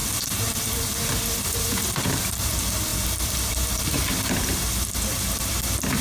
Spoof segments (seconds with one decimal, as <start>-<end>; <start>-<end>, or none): 0.0-6.0

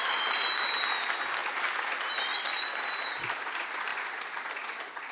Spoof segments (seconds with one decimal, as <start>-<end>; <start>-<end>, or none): none

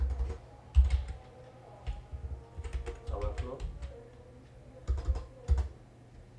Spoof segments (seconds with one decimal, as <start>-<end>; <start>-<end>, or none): none

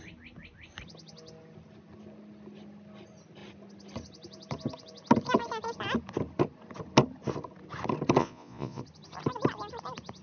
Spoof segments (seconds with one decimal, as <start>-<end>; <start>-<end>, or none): 8.2-8.8

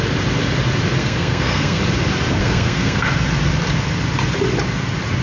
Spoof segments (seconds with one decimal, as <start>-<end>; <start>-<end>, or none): 1.0-1.8; 2.4-3.1

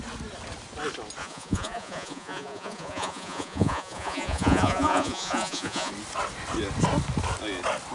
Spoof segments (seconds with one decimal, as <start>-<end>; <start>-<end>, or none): 1.2-5.9

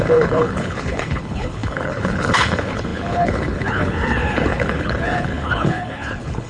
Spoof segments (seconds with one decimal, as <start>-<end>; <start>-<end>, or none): 0.0-6.5